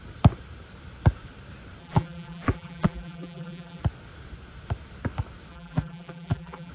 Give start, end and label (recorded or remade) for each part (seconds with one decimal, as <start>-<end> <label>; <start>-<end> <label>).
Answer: 0.0-1.8 recorded; 1.8-3.8 remade; 3.8-5.5 recorded; 5.5-6.7 remade